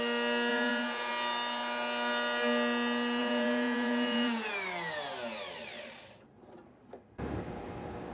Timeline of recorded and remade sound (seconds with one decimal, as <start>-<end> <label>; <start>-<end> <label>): 0.0-0.5 recorded; 0.5-1.1 remade; 1.1-3.2 recorded; 3.2-4.5 remade; 4.5-8.1 recorded